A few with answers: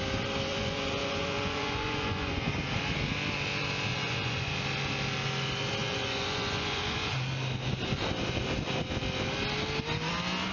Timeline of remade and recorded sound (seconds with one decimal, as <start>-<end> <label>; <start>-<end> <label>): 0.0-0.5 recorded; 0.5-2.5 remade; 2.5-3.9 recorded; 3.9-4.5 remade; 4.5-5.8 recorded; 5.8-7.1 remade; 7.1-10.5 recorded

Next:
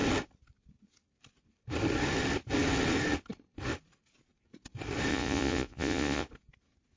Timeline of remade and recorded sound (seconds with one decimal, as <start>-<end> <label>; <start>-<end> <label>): 0.0-5.1 recorded; 5.1-6.3 remade; 6.3-7.0 recorded

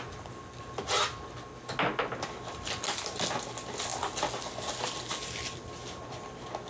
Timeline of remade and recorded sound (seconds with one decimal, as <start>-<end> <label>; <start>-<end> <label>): 0.0-6.7 recorded

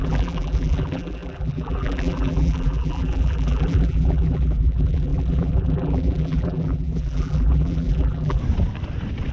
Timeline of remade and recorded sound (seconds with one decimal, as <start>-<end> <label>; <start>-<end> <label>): 0.0-8.4 remade; 8.4-9.3 recorded